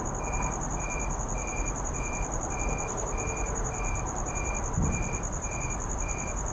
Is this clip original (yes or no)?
no